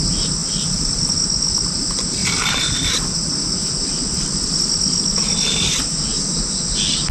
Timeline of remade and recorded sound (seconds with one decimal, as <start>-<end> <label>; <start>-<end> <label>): 0.0-0.4 recorded; 0.4-1.1 remade; 1.1-2.2 recorded; 2.2-3.3 remade; 3.3-7.1 recorded